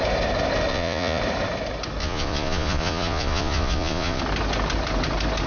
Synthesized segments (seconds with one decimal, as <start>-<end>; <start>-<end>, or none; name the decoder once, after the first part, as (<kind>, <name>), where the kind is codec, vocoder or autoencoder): 0.7-1.2 (vocoder, Vocos); 2.0-4.2